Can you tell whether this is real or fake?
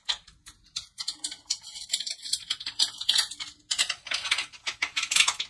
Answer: real